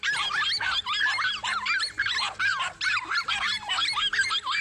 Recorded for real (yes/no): yes